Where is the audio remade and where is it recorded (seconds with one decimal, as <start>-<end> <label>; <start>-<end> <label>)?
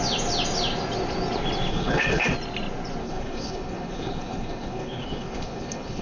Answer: 0.0-1.7 recorded; 1.7-2.3 remade; 2.3-3.0 recorded; 3.0-6.0 remade